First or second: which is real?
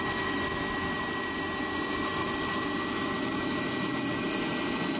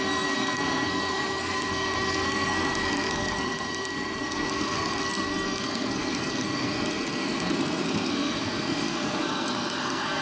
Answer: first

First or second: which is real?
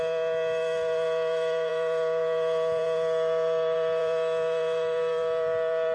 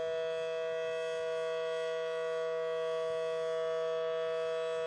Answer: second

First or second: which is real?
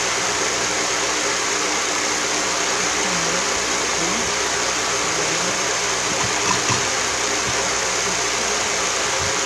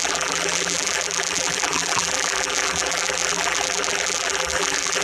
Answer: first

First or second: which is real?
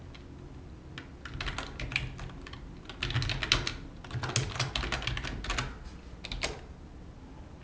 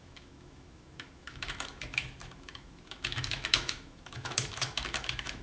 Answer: first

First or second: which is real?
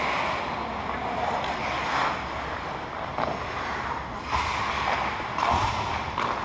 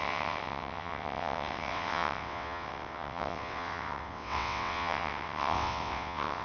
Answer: first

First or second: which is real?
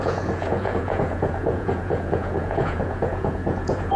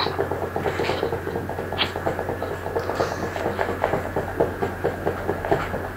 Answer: second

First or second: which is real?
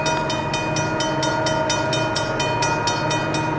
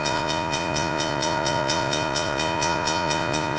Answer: first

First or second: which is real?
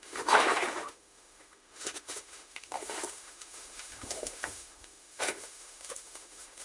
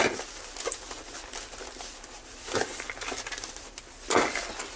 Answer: second